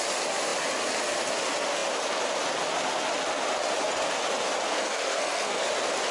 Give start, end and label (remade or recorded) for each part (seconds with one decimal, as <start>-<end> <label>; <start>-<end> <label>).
0.0-4.7 recorded; 4.7-5.6 remade; 5.6-6.1 recorded